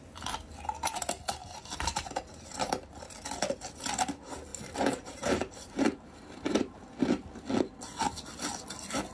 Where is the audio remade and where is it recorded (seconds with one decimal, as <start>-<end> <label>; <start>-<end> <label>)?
0.0-1.4 recorded; 1.4-2.9 remade; 2.9-4.5 recorded; 4.5-6.9 remade; 6.9-9.1 recorded